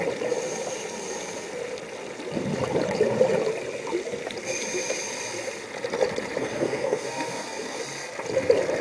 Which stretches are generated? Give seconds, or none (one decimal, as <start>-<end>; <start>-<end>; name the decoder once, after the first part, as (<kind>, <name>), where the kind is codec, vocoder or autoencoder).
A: 6.4-7.8 (codec, SNAC)